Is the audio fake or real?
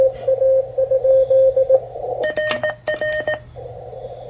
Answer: real